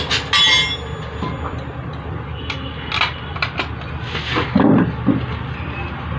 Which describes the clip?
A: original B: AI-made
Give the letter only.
A